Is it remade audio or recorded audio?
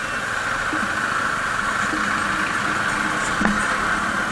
recorded